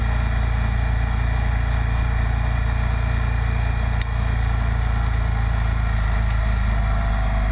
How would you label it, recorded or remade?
recorded